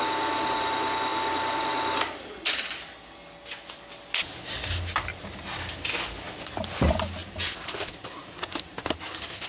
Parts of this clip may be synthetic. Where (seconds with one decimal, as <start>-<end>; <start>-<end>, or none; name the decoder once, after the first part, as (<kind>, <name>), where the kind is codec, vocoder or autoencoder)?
none